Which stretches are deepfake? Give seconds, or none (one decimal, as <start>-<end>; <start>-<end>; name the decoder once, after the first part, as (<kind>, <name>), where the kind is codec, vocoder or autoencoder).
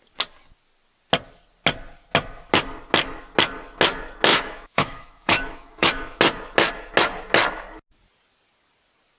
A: 4.3-6.2 (autoencoder, DAC-VAE)